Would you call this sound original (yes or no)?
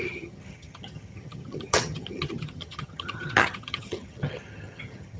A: no